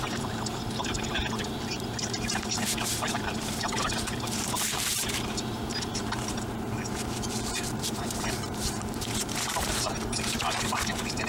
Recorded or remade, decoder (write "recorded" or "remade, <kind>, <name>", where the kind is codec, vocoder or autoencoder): remade, vocoder, BigVGAN v2